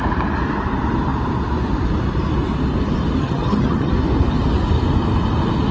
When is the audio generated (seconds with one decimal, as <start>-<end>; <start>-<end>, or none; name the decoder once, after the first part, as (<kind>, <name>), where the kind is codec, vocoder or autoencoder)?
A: 3.2-3.9 (vocoder, HiFi-GAN)